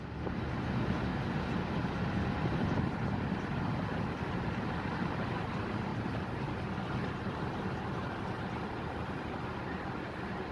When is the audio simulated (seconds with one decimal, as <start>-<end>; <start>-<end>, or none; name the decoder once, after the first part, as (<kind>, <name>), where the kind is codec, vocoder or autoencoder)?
none